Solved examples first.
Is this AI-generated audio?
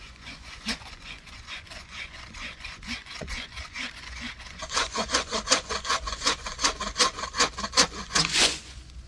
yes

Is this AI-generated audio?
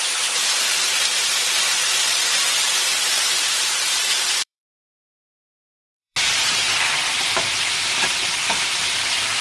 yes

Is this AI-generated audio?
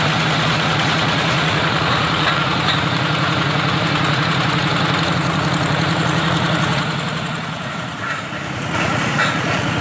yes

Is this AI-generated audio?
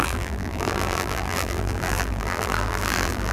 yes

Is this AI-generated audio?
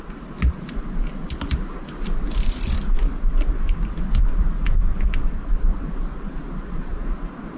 no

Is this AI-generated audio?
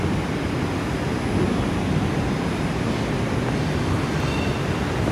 no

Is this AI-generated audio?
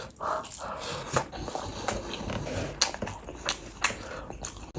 no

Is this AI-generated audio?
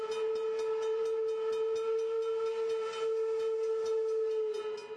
no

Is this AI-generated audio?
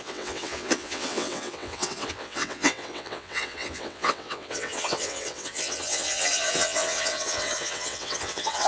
yes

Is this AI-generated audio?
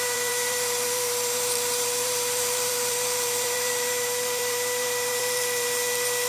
yes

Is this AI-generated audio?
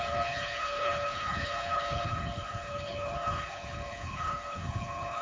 yes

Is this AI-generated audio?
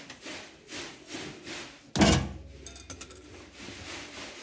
no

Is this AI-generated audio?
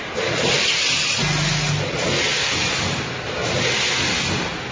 no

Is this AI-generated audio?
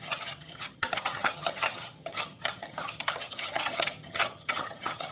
yes